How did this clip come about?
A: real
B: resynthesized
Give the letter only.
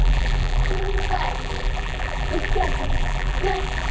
B